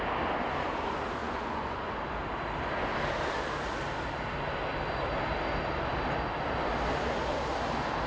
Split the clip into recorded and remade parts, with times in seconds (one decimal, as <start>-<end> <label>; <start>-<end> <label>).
0.0-1.2 recorded; 1.2-1.9 remade; 1.9-8.1 recorded